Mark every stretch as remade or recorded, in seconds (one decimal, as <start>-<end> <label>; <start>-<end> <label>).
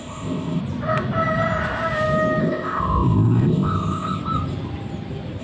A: 0.0-0.6 remade; 0.6-2.4 recorded; 2.4-4.2 remade; 4.2-5.4 recorded